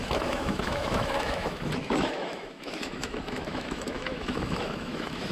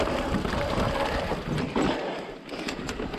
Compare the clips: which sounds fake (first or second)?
first